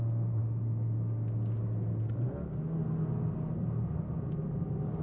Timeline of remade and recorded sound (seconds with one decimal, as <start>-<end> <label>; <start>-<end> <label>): 0.0-5.0 recorded